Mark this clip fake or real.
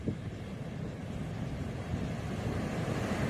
real